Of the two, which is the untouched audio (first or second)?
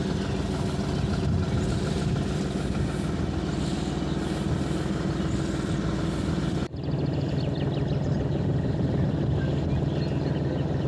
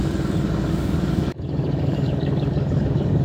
first